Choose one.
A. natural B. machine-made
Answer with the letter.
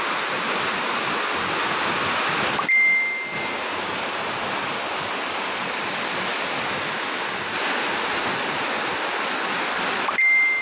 A